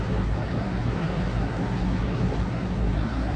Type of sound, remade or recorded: remade